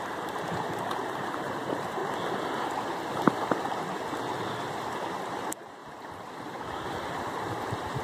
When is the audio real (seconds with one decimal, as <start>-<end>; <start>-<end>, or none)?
2.0-4.7; 5.8-6.4